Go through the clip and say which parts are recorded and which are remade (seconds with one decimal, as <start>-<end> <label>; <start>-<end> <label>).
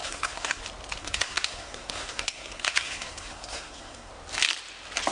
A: 0.0-0.6 remade; 0.6-1.0 recorded; 1.0-4.1 remade; 4.1-5.1 recorded